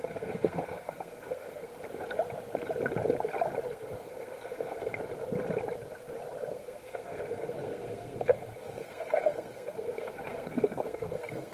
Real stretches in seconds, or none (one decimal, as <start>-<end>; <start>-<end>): 1.7-3.7; 4.9-6.5